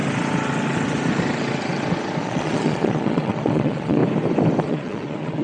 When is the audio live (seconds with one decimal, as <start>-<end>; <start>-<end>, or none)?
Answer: 0.0-2.2; 4.0-4.7